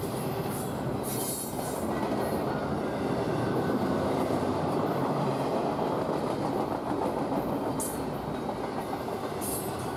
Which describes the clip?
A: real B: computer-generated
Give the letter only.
A